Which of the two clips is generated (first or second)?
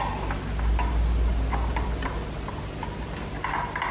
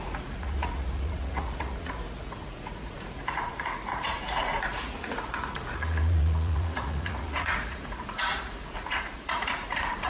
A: second